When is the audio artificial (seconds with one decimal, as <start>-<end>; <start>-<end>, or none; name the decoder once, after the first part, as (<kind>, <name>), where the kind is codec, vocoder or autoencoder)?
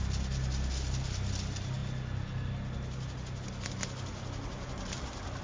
none